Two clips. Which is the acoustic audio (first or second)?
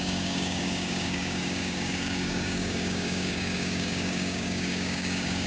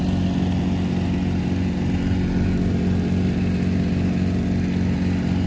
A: second